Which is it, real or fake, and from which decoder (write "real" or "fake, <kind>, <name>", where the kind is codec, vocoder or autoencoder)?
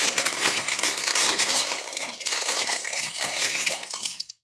fake, codec, SNAC